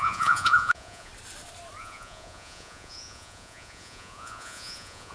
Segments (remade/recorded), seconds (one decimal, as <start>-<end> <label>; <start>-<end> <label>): 0.0-1.1 remade; 1.1-1.8 recorded; 1.8-5.1 remade